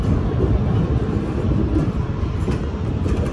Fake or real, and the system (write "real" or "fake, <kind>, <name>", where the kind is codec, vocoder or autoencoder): real